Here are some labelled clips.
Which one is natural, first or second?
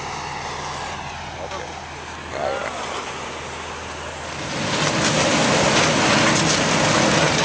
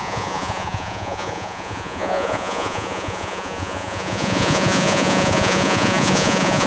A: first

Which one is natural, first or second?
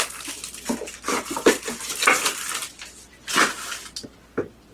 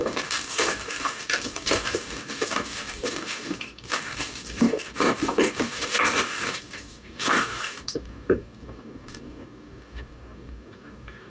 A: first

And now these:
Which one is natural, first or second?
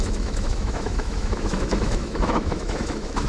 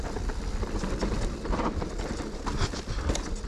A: second